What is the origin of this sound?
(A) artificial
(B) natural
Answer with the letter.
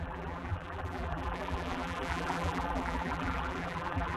A